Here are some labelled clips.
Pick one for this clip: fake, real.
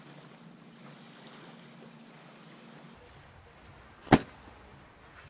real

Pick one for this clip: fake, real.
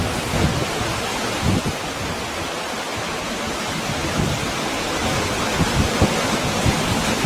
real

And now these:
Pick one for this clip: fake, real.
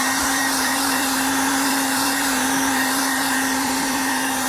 fake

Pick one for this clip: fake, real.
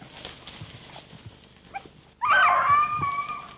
real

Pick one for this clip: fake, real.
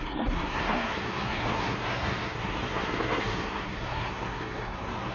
fake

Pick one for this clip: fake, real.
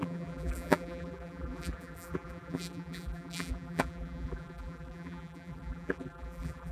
fake